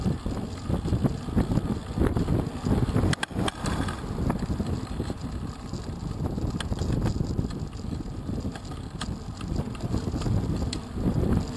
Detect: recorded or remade recorded